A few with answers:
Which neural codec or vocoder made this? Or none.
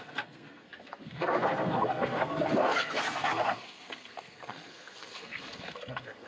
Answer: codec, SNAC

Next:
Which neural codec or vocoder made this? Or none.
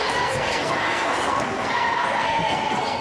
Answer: codec, SNAC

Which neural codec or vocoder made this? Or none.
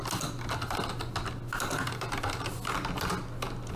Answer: none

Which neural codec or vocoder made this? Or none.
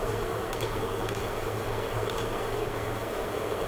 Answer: codec, SNAC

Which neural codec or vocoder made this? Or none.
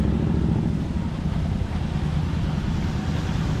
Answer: none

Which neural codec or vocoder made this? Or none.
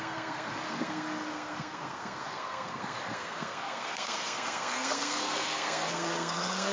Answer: codec, SNAC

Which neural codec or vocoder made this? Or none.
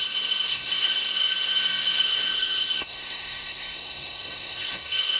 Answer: codec, SNAC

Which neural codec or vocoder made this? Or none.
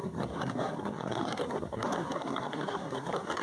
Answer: codec, SNAC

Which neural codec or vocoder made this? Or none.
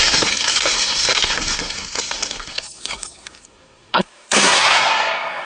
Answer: codec, SNAC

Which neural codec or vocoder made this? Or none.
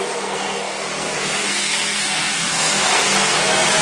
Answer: codec, SNAC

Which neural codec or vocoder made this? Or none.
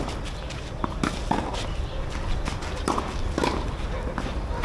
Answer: none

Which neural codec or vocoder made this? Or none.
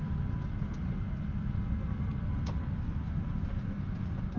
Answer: none